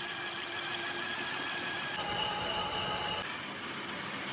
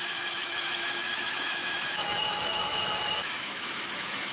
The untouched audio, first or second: first